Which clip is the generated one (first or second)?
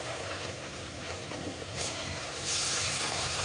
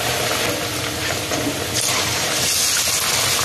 first